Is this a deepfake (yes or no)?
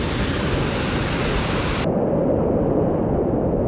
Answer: no